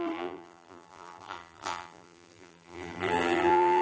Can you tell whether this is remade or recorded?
remade